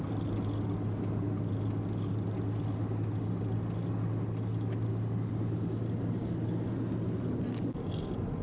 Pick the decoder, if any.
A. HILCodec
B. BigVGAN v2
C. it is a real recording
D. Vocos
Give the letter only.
C